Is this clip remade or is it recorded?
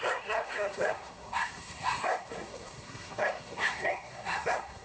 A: remade